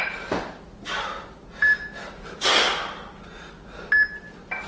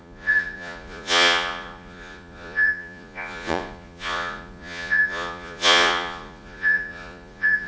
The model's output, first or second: second